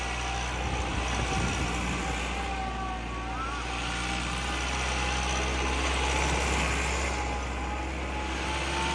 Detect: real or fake real